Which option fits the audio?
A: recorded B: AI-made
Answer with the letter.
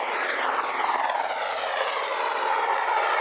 A